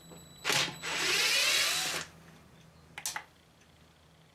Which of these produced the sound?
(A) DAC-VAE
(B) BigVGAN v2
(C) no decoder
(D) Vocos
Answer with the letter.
C